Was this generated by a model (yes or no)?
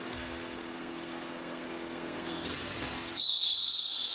yes